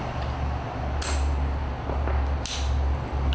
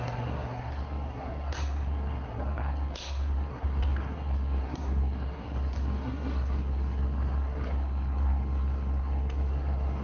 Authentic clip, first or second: first